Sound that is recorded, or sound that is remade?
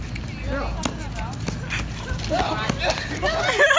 recorded